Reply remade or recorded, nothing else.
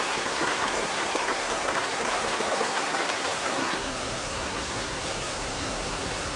remade